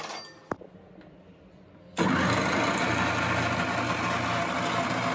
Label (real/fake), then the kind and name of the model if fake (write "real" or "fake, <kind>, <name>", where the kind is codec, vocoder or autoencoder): real